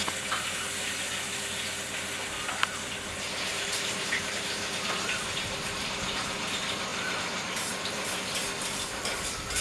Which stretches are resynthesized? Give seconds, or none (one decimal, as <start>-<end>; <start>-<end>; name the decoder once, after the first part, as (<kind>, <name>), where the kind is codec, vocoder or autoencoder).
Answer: 3.5-6.5 (vocoder, BigVGAN v2); 6.9-8.2

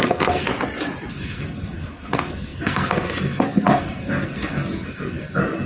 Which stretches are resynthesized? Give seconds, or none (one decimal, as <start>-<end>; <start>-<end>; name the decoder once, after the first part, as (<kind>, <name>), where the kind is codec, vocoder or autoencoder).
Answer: 0.0-0.5 (codec, SNAC); 1.1-5.7

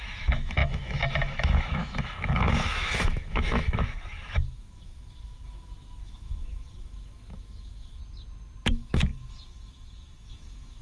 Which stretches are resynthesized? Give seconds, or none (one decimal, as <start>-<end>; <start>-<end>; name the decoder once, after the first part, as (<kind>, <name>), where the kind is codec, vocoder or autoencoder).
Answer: 0.0-8.0 (autoencoder, DAC-VAE); 8.7-10.8